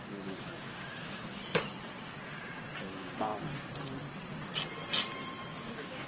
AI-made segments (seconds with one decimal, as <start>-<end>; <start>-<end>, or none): 0.0-1.4; 2.8-3.3; 5.5-6.1

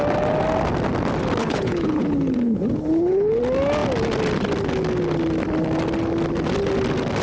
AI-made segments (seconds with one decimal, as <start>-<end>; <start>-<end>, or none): 1.4-3.4

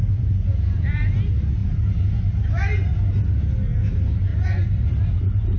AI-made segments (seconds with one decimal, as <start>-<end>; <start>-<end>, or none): 0.5-1.1

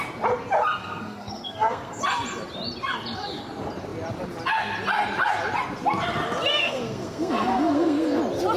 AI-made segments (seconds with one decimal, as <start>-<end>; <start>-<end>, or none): 0.8-2.0; 6.5-8.2

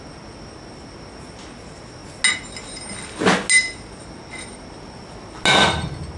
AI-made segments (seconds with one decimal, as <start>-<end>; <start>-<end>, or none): none

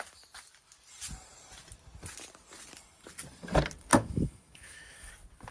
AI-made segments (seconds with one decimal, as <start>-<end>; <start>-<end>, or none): 3.9-5.1